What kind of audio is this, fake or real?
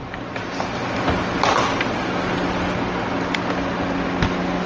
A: real